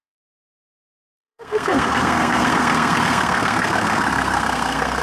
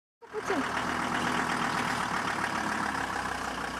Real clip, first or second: second